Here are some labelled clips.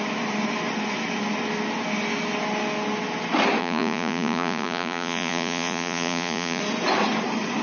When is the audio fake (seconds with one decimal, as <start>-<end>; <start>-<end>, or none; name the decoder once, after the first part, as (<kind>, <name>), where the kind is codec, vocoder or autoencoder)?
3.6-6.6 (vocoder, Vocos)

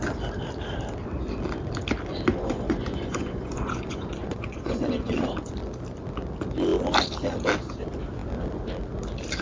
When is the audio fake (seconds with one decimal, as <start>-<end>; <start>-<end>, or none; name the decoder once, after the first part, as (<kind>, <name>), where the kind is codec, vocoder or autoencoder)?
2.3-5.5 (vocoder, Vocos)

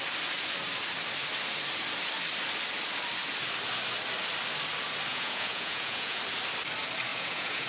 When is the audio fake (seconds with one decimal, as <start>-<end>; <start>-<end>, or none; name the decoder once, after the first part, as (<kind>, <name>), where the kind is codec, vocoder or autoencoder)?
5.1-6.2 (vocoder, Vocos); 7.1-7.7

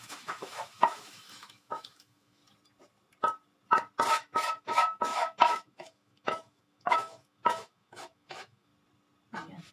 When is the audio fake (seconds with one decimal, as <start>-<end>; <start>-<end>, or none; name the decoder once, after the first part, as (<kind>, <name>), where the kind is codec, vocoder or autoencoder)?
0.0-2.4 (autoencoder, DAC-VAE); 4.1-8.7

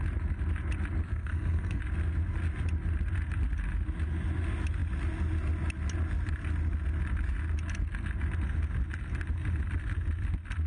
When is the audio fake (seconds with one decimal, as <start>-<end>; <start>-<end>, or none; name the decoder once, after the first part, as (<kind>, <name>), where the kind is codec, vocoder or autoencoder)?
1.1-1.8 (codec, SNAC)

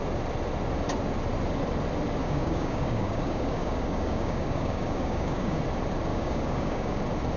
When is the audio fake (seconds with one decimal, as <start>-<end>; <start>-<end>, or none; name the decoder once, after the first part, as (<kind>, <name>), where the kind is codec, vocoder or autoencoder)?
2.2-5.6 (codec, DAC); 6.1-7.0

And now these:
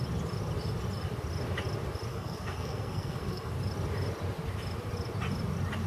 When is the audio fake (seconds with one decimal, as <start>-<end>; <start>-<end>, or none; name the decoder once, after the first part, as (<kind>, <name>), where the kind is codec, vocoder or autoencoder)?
2.1-3.5 (codec, SNAC)

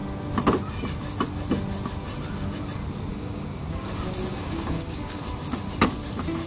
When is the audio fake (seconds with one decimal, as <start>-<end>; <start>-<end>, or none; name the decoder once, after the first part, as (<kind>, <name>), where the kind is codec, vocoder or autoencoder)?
3.1-3.9 (codec, DAC); 4.3-5.2